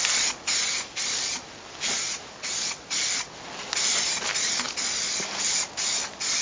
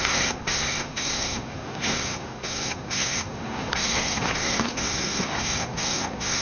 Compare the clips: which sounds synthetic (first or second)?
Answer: second